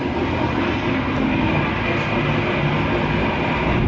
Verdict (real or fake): real